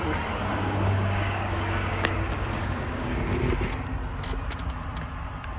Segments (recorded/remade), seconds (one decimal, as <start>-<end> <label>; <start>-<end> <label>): 0.0-0.4 recorded; 0.4-3.4 remade; 3.4-5.6 recorded